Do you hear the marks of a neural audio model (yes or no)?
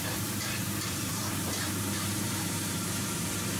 yes